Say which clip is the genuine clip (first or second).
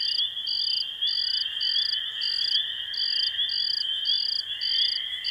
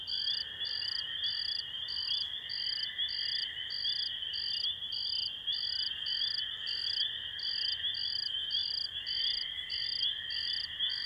first